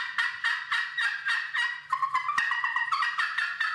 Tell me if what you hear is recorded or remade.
recorded